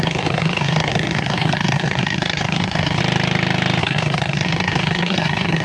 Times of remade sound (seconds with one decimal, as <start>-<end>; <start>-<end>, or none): 0.0-3.0; 3.8-5.6